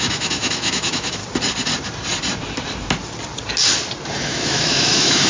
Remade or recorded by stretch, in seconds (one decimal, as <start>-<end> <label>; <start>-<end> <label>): 0.0-1.2 remade; 1.2-4.2 recorded; 4.2-5.3 remade